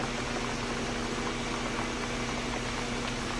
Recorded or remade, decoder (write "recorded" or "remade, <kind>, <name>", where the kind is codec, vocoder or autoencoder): recorded